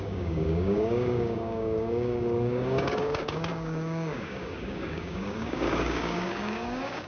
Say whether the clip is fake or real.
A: fake